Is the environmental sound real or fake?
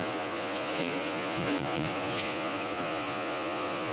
fake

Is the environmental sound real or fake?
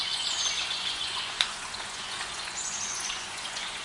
fake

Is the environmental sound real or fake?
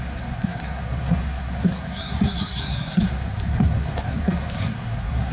fake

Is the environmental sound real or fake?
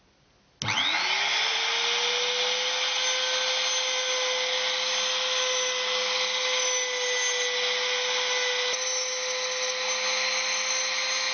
real